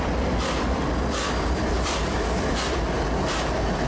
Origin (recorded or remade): recorded